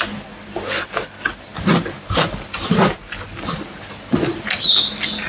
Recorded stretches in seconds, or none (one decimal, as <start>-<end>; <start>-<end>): 0.0-5.3